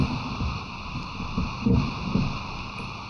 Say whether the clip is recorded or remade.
recorded